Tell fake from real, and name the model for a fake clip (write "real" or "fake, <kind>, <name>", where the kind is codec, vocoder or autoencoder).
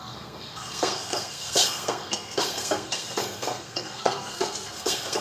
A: fake, codec, SNAC